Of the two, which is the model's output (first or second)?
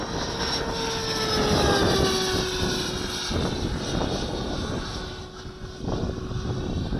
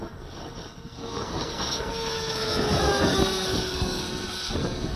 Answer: second